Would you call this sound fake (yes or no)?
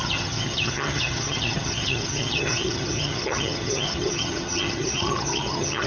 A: yes